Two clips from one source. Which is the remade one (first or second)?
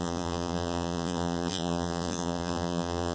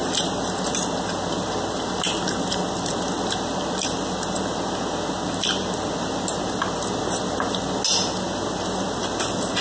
first